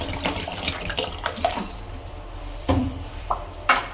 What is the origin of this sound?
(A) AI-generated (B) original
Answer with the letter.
A